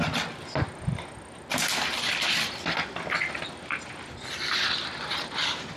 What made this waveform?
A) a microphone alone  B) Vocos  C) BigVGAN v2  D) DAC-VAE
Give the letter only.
A